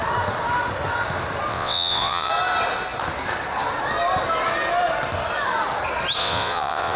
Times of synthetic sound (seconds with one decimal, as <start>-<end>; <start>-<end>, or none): 1.5-2.3; 6.2-7.0